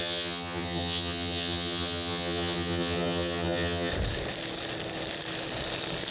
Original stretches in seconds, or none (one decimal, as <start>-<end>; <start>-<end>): 3.9-6.1